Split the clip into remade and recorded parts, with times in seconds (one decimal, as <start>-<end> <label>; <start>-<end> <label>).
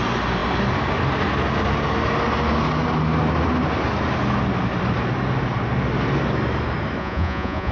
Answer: 0.0-7.0 recorded; 7.0-7.7 remade